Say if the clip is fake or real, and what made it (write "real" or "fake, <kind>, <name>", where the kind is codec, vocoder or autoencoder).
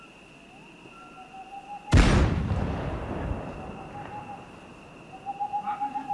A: real